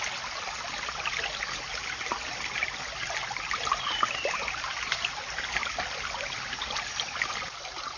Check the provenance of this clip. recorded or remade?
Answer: recorded